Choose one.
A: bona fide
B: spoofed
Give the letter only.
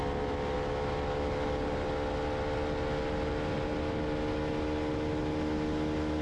A